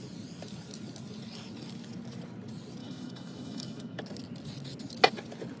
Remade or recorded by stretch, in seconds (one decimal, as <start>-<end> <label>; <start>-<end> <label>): 0.0-2.8 recorded; 2.8-4.0 remade; 4.0-5.6 recorded